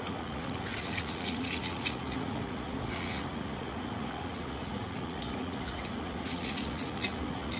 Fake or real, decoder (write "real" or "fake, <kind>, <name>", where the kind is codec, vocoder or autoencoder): fake, vocoder, Vocos